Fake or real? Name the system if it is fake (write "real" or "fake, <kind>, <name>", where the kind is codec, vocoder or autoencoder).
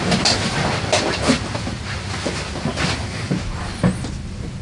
real